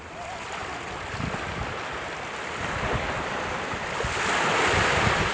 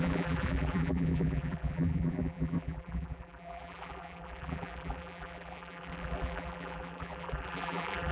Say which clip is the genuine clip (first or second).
first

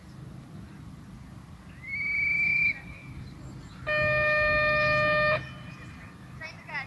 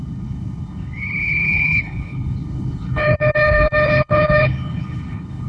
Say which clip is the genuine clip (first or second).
first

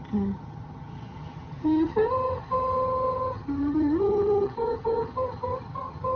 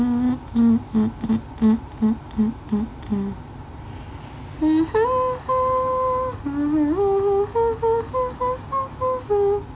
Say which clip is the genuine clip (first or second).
second